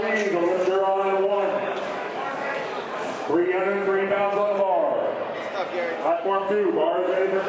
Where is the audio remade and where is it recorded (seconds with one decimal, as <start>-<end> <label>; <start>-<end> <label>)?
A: 0.0-0.8 remade; 0.8-1.3 recorded; 1.3-3.4 remade; 3.4-5.9 recorded; 5.9-7.5 remade